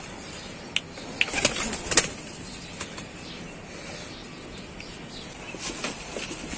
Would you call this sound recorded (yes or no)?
yes